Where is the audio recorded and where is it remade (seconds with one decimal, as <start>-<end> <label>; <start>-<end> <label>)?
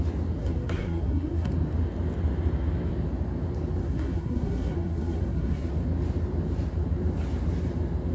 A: 0.0-0.4 recorded; 0.4-1.5 remade; 1.5-3.8 recorded; 3.8-5.7 remade; 5.7-8.1 recorded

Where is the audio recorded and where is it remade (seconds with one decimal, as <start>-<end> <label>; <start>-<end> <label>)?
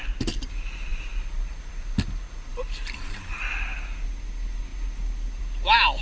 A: 0.0-2.5 recorded; 2.5-3.3 remade; 3.3-6.0 recorded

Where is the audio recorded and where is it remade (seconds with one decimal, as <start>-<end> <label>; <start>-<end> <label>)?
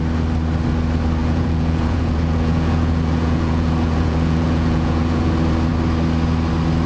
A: 0.0-1.2 recorded; 1.2-5.3 remade; 5.3-6.9 recorded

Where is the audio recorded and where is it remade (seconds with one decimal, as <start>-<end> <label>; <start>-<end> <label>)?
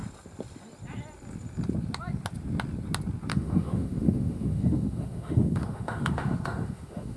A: 0.0-3.3 recorded; 3.3-7.2 remade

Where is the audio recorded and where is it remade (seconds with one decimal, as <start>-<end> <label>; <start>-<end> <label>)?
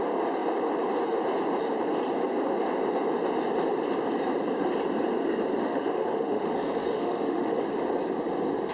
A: 0.0-5.6 recorded; 5.6-6.5 remade; 6.5-6.9 recorded; 6.9-7.6 remade; 7.6-8.7 recorded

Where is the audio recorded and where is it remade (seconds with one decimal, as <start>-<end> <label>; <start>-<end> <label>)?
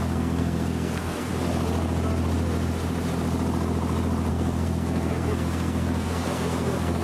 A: 0.0-1.3 remade; 1.3-4.3 recorded; 4.3-7.0 remade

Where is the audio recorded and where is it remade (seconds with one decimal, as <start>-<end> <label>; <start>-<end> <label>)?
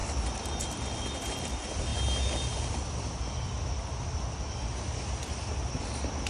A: 0.0-6.3 recorded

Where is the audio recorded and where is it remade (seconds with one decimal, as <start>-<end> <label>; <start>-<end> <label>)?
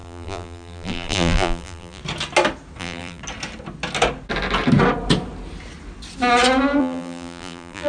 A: 0.0-2.0 remade; 2.0-2.8 recorded; 2.8-3.2 remade; 3.2-6.8 recorded; 6.8-7.9 remade